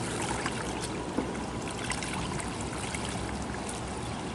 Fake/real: real